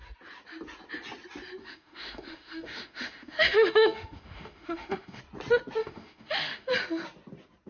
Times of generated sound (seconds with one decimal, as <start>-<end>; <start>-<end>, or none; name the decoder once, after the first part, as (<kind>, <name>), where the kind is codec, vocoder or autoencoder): 1.6-5.2 (autoencoder, DAC-VAE); 5.8-6.7